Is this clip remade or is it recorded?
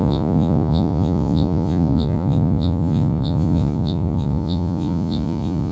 remade